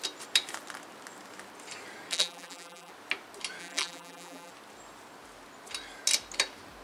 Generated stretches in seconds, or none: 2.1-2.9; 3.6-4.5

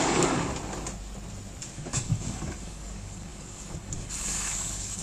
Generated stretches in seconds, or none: 0.0-0.5; 1.7-5.0

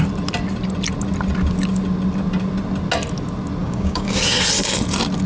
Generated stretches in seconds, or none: 3.6-4.2